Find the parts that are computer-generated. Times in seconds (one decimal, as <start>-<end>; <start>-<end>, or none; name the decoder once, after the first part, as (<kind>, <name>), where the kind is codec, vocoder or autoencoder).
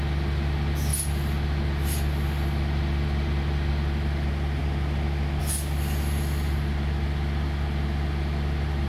none